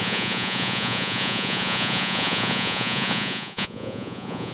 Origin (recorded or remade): remade